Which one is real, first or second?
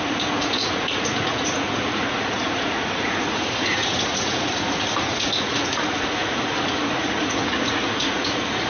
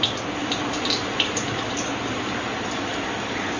second